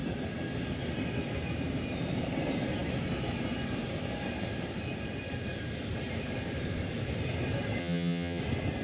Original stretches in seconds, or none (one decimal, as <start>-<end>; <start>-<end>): 0.0-7.8; 8.4-8.8